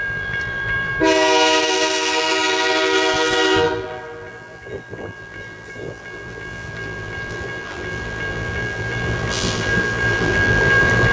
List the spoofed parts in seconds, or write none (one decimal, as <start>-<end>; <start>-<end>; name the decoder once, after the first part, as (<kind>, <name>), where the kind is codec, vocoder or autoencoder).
0.0-0.9 (vocoder, BigVGAN v2); 1.6-11.1